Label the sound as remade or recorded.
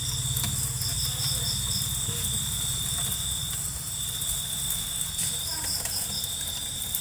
recorded